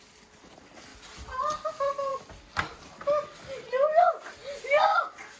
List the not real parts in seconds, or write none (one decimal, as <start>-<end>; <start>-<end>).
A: none